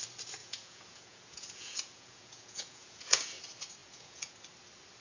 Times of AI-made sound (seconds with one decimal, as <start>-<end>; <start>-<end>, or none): 0.4-3.4; 3.8-4.4